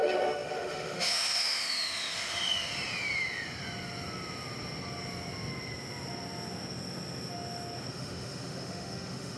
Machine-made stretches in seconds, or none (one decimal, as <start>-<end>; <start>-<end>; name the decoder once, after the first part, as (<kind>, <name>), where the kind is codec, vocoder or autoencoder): 0.0-2.7 (autoencoder, DAC-VAE); 7.9-9.4